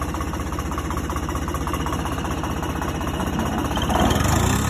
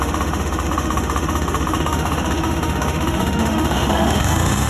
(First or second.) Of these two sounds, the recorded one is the first